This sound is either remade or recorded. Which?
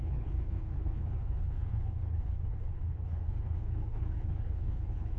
remade